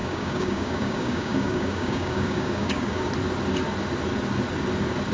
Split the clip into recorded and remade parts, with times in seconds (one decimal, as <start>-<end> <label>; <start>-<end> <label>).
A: 0.0-3.1 remade; 3.1-5.1 recorded